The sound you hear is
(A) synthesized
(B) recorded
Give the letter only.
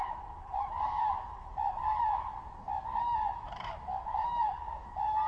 A